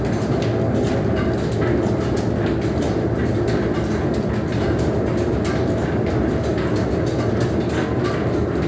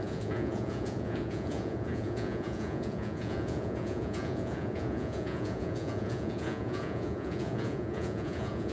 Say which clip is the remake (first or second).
second